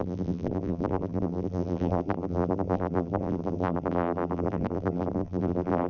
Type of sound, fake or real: fake